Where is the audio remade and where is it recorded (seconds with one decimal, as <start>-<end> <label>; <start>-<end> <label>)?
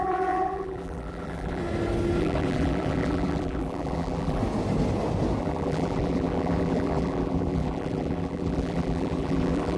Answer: 0.0-1.6 remade; 1.6-2.2 recorded; 2.2-4.4 remade; 4.4-5.4 recorded; 5.4-9.8 remade